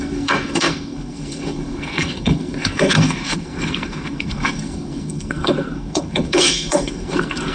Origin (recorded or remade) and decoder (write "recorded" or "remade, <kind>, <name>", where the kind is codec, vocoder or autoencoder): remade, codec, SNAC